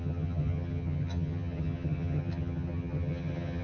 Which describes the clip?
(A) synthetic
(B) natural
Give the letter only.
A